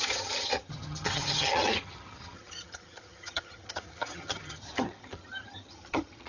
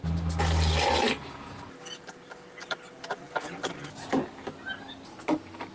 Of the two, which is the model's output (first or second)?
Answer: first